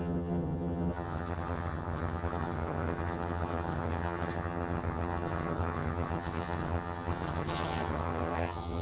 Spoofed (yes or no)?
yes